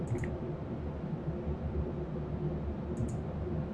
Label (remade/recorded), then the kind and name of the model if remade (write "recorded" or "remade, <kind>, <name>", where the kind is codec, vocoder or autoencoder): recorded